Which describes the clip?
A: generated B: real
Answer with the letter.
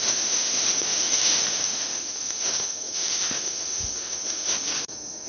A